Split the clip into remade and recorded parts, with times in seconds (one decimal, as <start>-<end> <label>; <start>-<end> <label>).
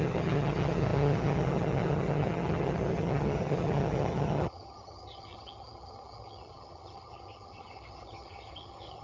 0.0-9.0 remade